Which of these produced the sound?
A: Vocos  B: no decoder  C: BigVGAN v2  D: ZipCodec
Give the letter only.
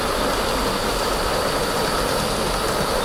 B